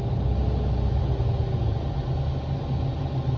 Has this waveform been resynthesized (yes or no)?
no